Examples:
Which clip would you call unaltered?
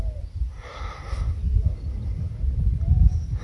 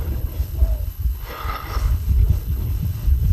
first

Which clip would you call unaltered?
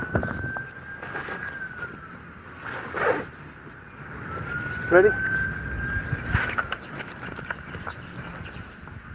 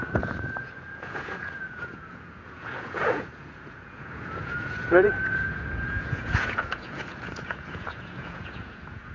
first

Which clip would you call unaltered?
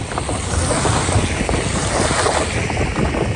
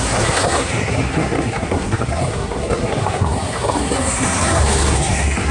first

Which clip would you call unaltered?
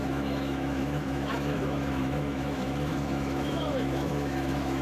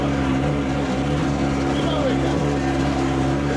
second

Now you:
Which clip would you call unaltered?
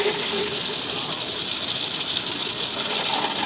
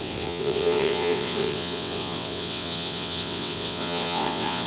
first